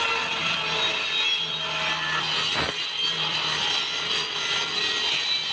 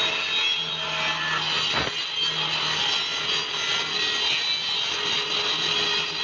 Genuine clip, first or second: second